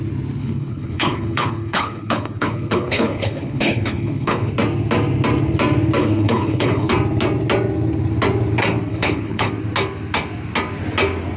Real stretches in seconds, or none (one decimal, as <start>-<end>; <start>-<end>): 0.0-0.4; 4.5-6.0; 6.9-8.9; 9.5-11.4